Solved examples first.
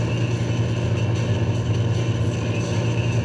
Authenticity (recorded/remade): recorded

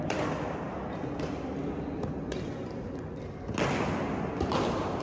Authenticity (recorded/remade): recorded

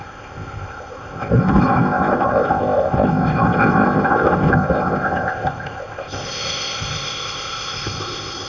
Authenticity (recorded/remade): remade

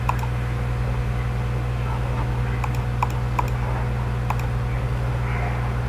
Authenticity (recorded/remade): recorded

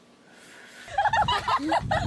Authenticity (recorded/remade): recorded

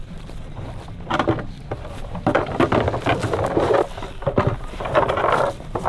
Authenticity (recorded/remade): remade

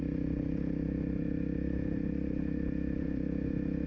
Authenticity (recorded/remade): recorded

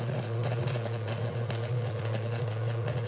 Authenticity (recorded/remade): remade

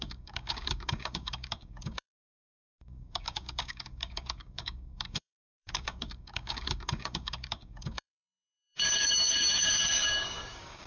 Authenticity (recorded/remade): remade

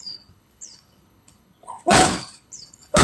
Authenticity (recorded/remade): remade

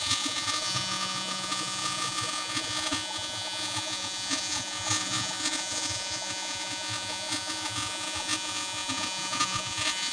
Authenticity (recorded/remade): remade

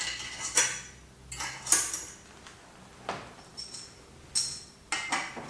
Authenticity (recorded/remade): recorded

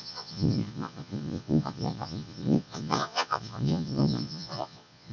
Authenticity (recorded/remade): remade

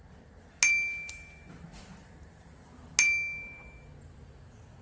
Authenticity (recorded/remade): recorded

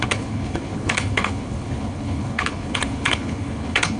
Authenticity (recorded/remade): remade